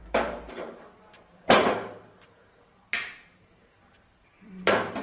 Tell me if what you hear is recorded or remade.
remade